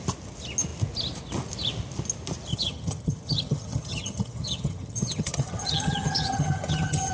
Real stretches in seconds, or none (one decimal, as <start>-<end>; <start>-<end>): 0.0-2.5